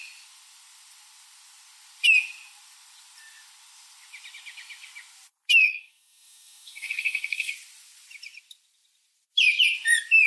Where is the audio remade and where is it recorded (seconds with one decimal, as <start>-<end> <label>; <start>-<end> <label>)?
0.0-5.6 recorded; 5.6-7.5 remade; 7.5-10.3 recorded